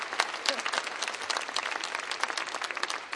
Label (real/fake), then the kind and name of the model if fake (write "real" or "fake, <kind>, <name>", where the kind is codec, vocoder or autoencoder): real